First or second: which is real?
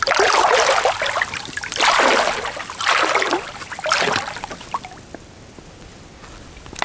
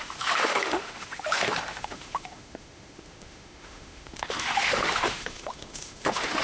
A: first